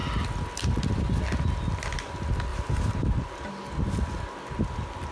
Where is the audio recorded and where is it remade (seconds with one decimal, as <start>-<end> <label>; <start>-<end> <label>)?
0.0-2.5 recorded; 2.5-3.5 remade; 3.5-5.1 recorded